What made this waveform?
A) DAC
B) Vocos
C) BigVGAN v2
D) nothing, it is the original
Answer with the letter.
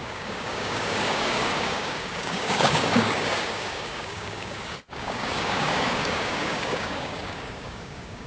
A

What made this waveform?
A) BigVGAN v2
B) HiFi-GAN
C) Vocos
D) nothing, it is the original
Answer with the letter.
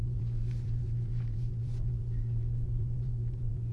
A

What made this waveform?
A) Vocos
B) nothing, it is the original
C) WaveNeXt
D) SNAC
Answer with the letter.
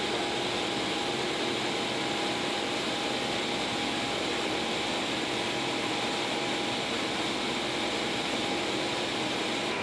B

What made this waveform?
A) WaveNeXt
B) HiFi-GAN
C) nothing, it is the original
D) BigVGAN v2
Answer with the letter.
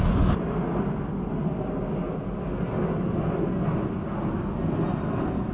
C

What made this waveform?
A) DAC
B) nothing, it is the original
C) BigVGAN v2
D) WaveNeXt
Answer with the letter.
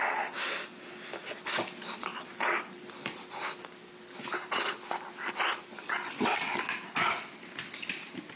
B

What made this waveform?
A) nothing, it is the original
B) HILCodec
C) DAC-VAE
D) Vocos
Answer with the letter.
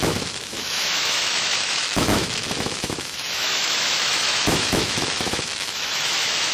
C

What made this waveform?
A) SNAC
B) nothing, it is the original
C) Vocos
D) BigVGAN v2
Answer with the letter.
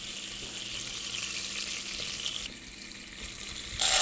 B